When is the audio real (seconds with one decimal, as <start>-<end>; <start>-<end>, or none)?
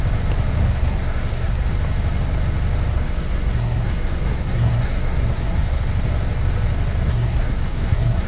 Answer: 0.0-0.6; 1.7-2.9; 5.8-7.0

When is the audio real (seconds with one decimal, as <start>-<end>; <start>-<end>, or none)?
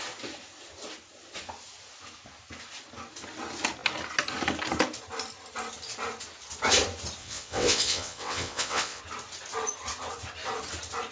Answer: 0.0-7.2; 9.0-11.1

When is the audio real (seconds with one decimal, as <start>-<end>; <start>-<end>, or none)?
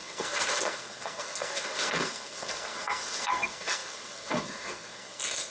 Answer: none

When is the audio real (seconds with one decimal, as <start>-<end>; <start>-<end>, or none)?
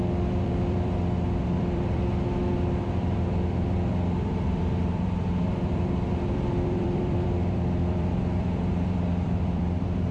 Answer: none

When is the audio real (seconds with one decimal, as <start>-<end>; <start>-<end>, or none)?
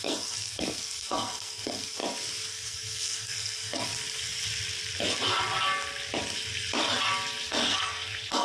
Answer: 2.0-2.5; 3.9-7.5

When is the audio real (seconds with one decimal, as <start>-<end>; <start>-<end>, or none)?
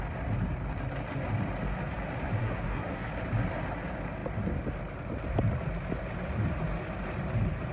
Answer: 0.0-2.4; 3.1-7.7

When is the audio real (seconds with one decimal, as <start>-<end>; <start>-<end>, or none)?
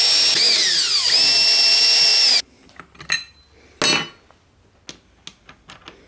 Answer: 0.0-6.1